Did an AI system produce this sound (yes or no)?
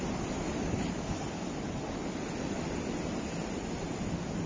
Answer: no